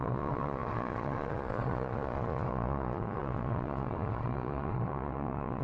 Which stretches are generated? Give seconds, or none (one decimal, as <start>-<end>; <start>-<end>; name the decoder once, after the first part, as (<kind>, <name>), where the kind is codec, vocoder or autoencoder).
0.0-5.6 (vocoder, Vocos)